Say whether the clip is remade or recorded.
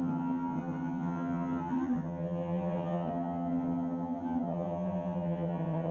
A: remade